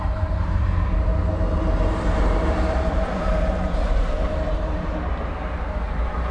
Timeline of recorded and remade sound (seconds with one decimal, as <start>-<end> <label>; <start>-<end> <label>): 0.0-1.1 remade; 1.1-1.9 recorded; 1.9-6.3 remade